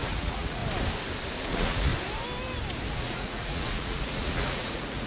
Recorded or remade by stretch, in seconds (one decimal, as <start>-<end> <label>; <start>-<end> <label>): 0.0-0.6 remade; 0.6-1.4 recorded; 1.4-1.9 remade; 1.9-2.9 recorded; 2.9-5.1 remade